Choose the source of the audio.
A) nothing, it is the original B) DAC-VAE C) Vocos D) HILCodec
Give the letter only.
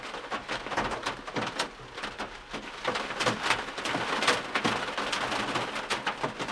A